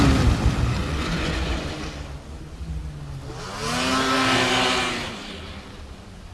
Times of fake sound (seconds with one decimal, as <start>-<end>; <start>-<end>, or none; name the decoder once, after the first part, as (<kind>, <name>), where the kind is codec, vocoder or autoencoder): 0.8-1.7 (vocoder, Vocos)